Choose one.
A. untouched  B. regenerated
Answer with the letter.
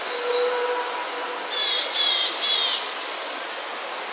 A